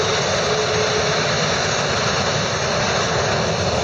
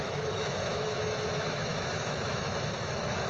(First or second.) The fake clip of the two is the second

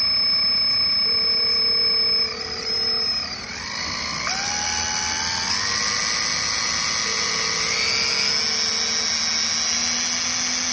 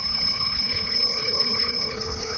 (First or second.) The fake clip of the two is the second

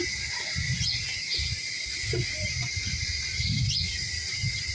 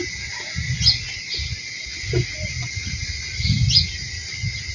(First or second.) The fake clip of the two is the first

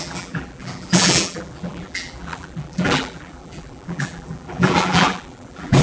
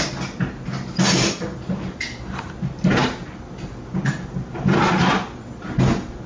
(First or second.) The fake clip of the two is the first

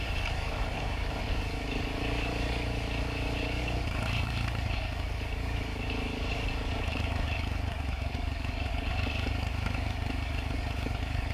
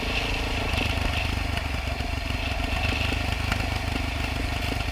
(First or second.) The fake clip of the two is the first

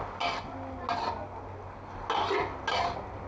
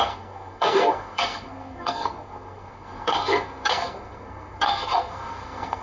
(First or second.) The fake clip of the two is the second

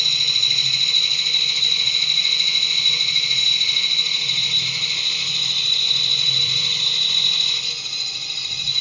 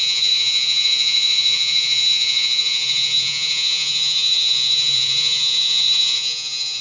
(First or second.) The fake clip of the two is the second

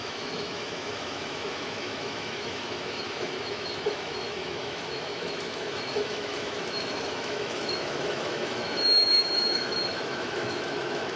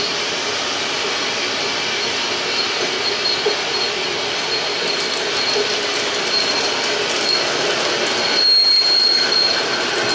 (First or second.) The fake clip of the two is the first